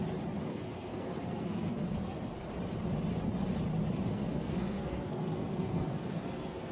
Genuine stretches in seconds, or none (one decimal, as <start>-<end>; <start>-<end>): 0.0-0.5; 2.5-4.1